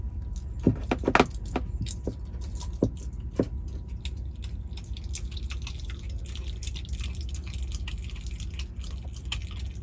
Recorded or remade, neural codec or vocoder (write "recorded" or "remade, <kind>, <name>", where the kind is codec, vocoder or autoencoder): recorded